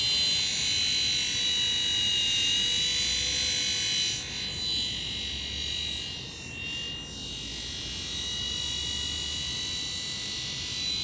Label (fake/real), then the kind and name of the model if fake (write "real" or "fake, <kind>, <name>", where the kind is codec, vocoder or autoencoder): real